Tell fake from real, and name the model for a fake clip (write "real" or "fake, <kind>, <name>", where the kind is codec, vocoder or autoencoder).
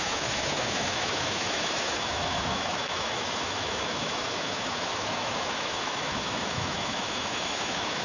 fake, autoencoder, DAC-VAE